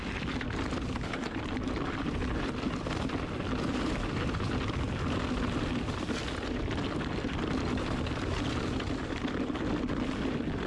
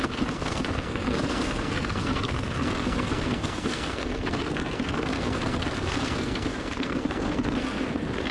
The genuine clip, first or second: first